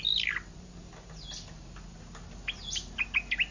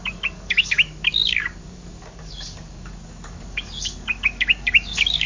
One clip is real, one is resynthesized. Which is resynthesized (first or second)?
second